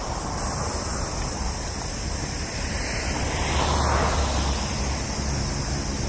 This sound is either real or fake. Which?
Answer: real